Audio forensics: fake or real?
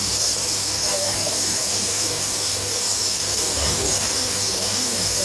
fake